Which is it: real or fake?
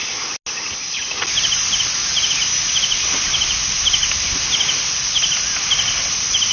real